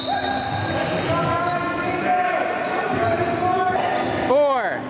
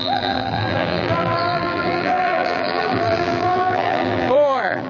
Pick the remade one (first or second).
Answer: second